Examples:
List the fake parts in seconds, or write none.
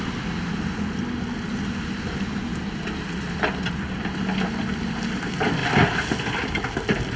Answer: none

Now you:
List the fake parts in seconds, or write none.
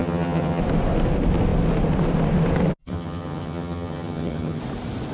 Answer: 0.0-0.6 (vocoder, HiFi-GAN); 2.8-4.6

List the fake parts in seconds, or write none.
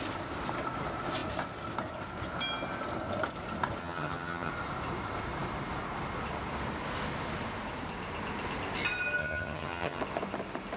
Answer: 3.8-4.5 (vocoder, HiFi-GAN); 9.2-10.0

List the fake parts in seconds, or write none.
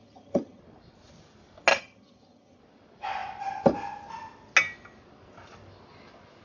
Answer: 0.0-0.6 (vocoder, HiFi-GAN); 1.7-2.6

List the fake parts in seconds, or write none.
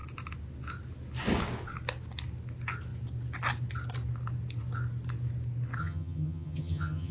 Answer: 5.8-7.1 (vocoder, HiFi-GAN)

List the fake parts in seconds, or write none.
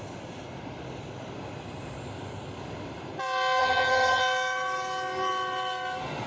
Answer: 3.6-4.2 (vocoder, HiFi-GAN)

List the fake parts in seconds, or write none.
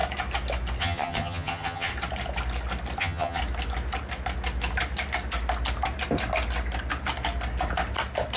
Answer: 0.8-1.9 (vocoder, HiFi-GAN); 3.0-3.4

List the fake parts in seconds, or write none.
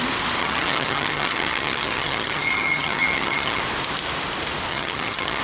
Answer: 0.4-3.6 (vocoder, HiFi-GAN); 4.7-5.4